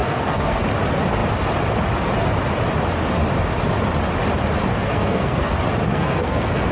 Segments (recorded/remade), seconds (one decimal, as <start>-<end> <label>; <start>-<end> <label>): 0.0-0.6 remade; 0.6-4.7 recorded; 4.7-5.5 remade; 5.5-5.9 recorded; 5.9-6.7 remade